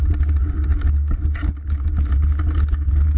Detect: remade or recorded recorded